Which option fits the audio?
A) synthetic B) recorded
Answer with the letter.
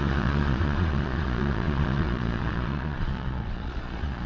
A